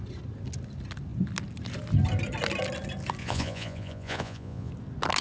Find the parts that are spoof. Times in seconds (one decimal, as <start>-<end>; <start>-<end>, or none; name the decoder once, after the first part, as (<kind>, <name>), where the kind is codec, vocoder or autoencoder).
3.2-4.7 (vocoder, Vocos)